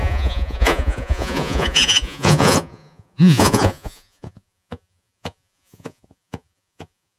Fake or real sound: fake